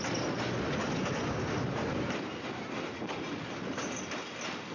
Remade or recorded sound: recorded